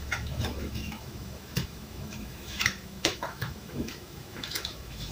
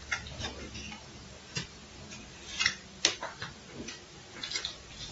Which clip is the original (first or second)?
second